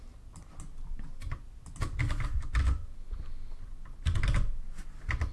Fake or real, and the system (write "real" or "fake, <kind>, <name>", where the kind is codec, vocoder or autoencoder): real